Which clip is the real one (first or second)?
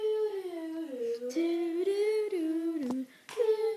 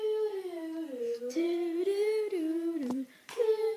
first